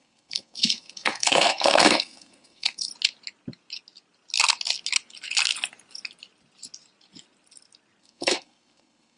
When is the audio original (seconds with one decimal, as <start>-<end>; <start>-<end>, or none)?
2.9-8.0